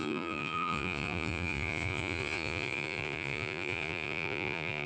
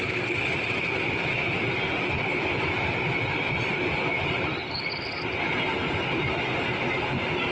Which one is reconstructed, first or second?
first